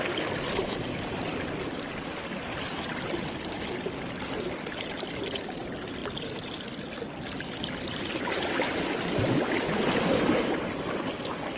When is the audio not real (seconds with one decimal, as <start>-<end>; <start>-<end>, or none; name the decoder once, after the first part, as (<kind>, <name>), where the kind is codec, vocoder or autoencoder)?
none